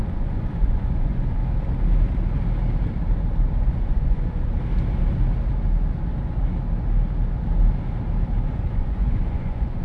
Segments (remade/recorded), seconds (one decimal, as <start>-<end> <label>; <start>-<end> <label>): 0.0-1.4 remade; 1.4-3.7 recorded; 3.7-4.5 remade; 4.5-8.4 recorded; 8.4-9.8 remade

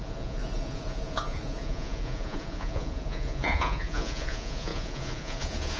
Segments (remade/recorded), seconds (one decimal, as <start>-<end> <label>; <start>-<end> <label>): 0.0-5.8 remade

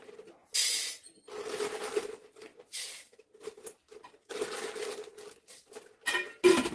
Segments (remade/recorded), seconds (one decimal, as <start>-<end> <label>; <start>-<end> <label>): 0.0-0.4 recorded; 0.4-1.1 remade; 1.1-6.7 recorded

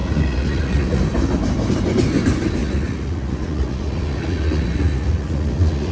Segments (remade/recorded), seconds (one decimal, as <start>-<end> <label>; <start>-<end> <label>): 0.0-1.0 remade; 1.0-2.6 recorded; 2.6-5.9 remade

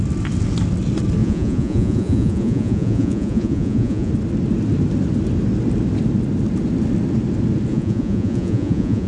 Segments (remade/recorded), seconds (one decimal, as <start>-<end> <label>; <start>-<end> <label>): 0.0-1.2 recorded; 1.2-4.1 remade; 4.1-7.7 recorded; 7.7-9.1 remade